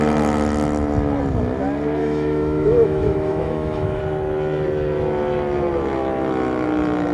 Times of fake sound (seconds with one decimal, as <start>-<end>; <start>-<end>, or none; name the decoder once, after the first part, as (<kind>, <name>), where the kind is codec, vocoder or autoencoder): 2.0-4.0 (autoencoder, DAC-VAE)